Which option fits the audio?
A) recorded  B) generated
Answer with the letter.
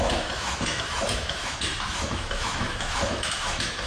B